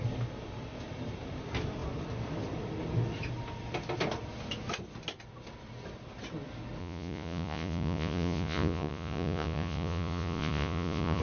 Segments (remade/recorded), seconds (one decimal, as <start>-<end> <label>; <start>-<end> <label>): 0.0-6.8 recorded; 6.8-11.2 remade